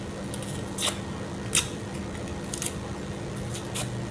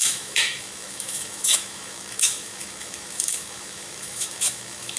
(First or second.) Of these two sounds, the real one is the first